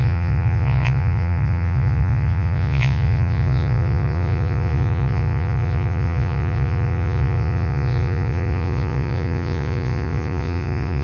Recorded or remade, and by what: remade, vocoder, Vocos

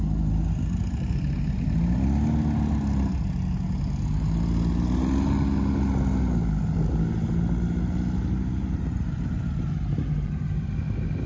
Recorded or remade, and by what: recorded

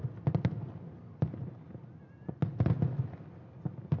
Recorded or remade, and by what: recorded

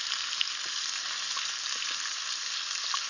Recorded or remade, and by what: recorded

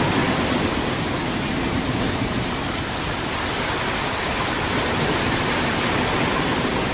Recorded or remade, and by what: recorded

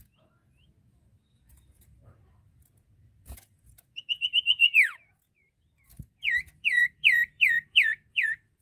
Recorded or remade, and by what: remade, vocoder, Vocos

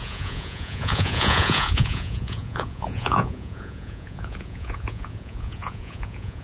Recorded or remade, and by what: remade, vocoder, Vocos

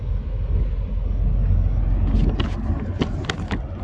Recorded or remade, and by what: recorded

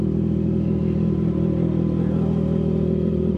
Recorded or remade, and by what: recorded